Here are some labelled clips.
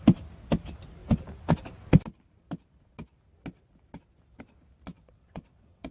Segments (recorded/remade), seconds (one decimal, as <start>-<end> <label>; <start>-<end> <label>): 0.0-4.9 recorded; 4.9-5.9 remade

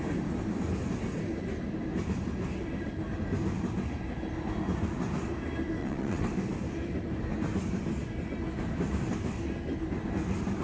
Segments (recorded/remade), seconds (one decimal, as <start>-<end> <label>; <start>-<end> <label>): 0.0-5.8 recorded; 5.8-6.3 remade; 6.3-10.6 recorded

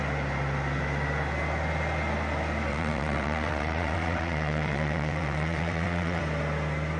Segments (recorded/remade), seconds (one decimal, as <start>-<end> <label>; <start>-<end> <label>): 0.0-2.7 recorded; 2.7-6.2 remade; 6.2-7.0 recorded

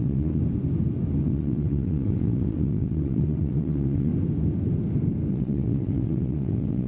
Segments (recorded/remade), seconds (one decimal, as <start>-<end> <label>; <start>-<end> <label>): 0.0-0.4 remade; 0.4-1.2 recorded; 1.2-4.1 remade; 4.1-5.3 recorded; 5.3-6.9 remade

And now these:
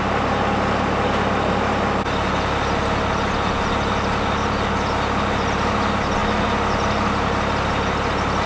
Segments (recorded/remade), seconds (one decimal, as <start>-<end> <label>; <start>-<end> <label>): 0.0-8.5 recorded

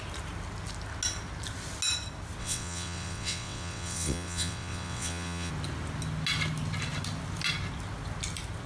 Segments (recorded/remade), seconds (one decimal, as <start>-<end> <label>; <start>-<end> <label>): 0.0-2.4 recorded; 2.4-5.5 remade; 5.5-8.7 recorded

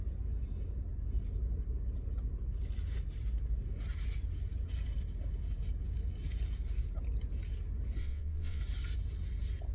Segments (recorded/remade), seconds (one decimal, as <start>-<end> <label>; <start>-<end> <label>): 0.0-8.0 recorded; 8.0-8.6 remade; 8.6-9.7 recorded